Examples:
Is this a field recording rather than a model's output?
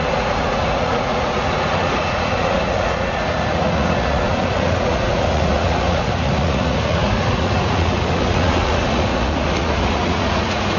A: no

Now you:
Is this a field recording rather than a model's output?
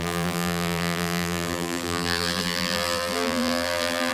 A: no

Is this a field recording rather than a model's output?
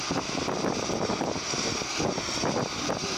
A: yes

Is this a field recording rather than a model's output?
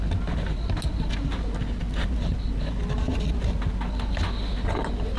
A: yes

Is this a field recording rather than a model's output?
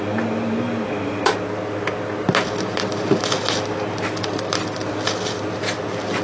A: yes